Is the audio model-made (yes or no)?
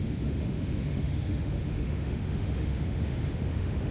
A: yes